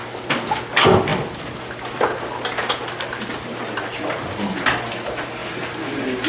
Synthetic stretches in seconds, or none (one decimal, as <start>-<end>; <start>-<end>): none